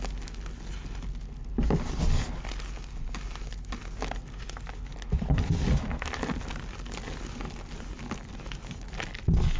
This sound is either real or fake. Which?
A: real